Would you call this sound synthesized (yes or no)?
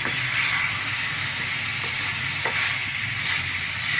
no